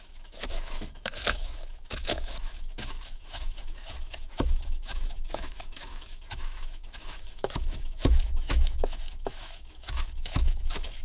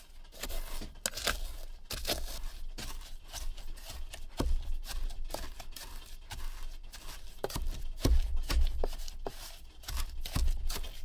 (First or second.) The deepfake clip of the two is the first